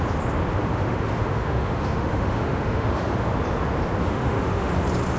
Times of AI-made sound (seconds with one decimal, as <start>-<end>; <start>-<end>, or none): 0.6-3.3; 4.0-4.7